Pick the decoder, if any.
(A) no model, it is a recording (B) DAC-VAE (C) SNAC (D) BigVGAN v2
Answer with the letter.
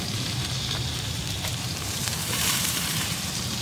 D